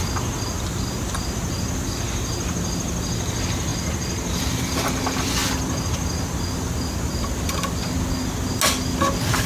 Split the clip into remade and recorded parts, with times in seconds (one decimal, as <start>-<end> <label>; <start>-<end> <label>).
0.0-9.5 recorded